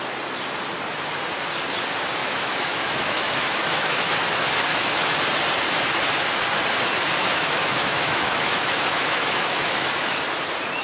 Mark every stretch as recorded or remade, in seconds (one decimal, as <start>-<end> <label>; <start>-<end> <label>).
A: 0.0-2.2 recorded; 2.2-4.0 remade; 4.0-4.7 recorded; 4.7-5.2 remade; 5.2-7.2 recorded; 7.2-10.4 remade; 10.4-10.8 recorded